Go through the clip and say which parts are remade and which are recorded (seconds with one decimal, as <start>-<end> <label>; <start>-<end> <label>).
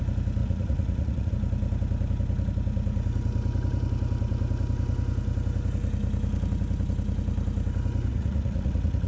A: 0.0-0.4 recorded; 0.4-1.3 remade; 1.3-8.1 recorded; 8.1-9.1 remade